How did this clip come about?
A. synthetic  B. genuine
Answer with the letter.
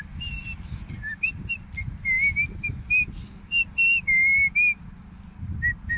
B